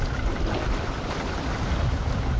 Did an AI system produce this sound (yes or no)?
no